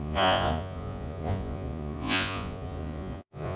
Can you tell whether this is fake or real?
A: fake